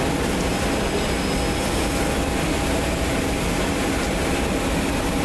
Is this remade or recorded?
recorded